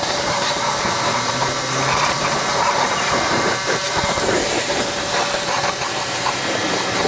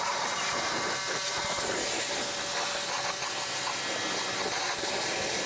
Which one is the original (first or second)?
second